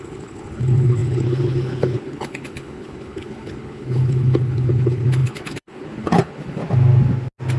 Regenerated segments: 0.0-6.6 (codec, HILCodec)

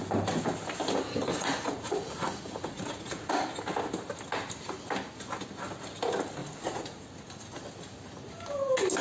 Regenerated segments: 1.3-3.3 (vocoder, Vocos); 6.4-7.1

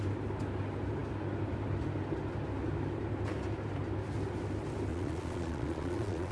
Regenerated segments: 4.9-6.3 (vocoder, Vocos)

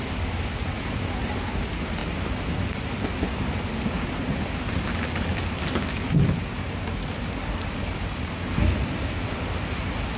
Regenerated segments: none

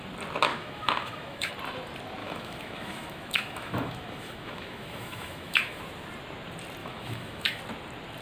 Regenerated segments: 0.5-1.5 (autoencoder, DAC-VAE); 2.2-5.8; 6.8-7.6

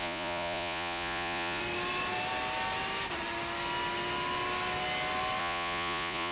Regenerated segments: 0.0-1.6 (vocoder, Vocos); 5.4-6.3

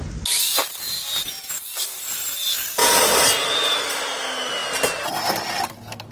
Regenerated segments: none